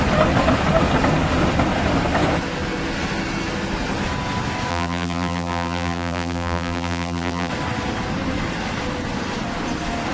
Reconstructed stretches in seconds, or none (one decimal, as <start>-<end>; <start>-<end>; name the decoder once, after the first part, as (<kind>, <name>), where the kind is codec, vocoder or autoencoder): 4.7-7.5 (vocoder, BigVGAN v2)

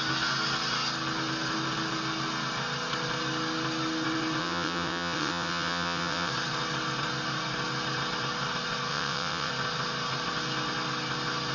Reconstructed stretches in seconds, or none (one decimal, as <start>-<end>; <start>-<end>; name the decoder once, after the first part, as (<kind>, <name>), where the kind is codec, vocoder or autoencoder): 4.4-6.3 (vocoder, WaveNeXt); 8.9-9.5

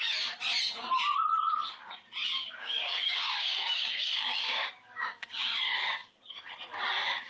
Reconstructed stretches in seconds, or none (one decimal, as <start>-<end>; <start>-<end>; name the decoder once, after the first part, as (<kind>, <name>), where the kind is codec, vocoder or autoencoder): 2.3-5.6 (codec, DAC)